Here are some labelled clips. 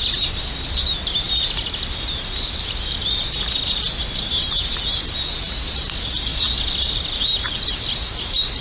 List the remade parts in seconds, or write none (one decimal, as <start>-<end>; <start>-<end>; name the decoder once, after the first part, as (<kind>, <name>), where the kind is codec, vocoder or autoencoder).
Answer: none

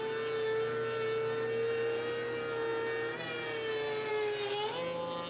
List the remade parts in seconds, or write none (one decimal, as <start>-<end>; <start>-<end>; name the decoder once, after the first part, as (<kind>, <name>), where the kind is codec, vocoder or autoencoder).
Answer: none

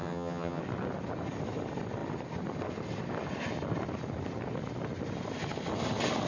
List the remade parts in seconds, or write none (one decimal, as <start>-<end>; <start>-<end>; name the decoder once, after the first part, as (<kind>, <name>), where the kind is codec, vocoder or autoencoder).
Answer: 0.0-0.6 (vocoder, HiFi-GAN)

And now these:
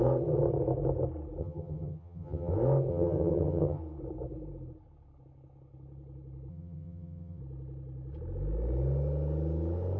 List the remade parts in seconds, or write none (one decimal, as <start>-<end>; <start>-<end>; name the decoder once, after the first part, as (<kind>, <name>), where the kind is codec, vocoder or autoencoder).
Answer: 1.4-2.5 (vocoder, HiFi-GAN); 2.9-3.8; 6.5-7.4